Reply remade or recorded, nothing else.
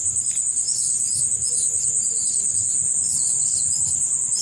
recorded